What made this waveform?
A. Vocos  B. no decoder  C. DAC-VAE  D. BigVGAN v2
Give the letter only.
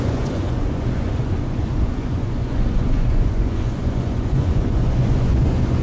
A